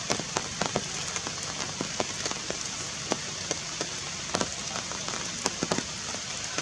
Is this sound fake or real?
fake